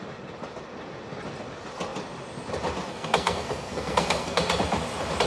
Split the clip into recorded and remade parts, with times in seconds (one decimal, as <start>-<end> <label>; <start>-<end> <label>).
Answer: 0.0-2.9 recorded; 2.9-4.4 remade; 4.4-5.3 recorded